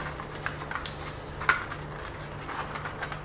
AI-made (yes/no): no